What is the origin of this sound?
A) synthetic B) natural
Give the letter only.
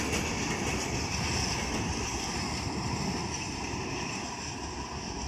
B